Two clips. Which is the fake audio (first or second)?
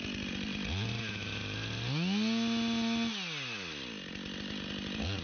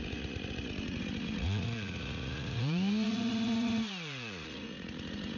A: second